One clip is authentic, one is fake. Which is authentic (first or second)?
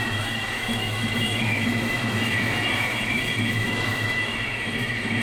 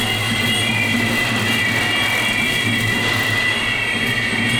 second